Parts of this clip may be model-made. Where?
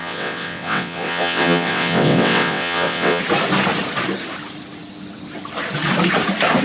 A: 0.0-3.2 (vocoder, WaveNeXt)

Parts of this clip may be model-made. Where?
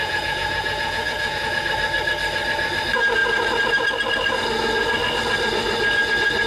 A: 0.0-1.6 (vocoder, Vocos)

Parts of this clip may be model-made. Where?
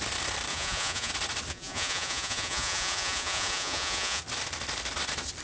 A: 0.5-1.1 (vocoder, Vocos); 1.5-4.2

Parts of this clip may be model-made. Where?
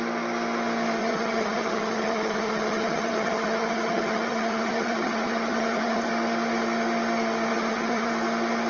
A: 1.0-6.1 (vocoder, HiFi-GAN); 7.5-8.1